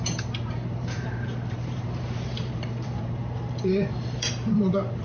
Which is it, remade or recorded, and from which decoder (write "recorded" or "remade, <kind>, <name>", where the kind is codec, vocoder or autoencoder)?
remade, vocoder, BigVGAN v2